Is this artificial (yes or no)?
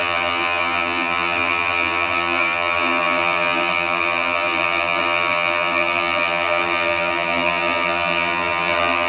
yes